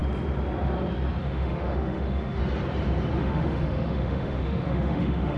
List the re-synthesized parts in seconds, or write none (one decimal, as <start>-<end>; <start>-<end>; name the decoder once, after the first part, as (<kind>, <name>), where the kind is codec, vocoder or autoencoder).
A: 1.2-2.4 (autoencoder, DAC-VAE); 3.2-5.4